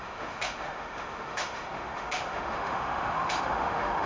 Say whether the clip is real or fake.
fake